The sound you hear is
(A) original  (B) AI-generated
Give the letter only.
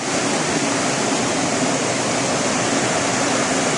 A